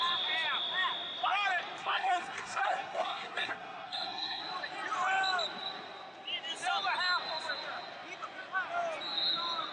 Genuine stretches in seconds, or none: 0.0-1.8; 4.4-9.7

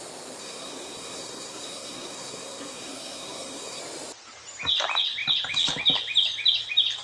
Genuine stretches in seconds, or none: 0.0-0.4; 3.8-7.0